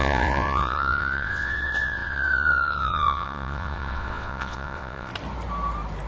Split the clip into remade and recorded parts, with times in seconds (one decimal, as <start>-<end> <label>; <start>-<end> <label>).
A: 0.0-5.1 remade; 5.1-6.1 recorded